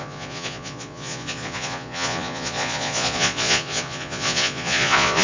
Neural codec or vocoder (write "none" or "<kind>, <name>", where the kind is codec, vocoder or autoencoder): vocoder, Vocos